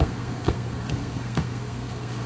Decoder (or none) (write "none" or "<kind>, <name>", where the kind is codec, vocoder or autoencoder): codec, SNAC